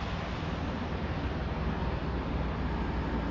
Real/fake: real